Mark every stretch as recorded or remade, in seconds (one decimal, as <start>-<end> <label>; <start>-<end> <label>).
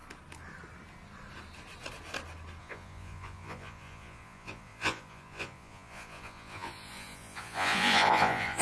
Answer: 0.0-2.6 recorded; 2.6-8.6 remade